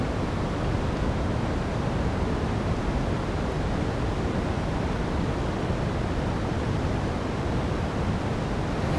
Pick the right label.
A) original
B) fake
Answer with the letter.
A